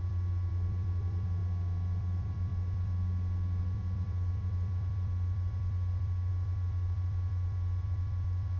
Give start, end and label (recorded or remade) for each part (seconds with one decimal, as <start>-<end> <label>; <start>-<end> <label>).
0.0-1.4 remade; 1.4-2.0 recorded; 2.0-8.6 remade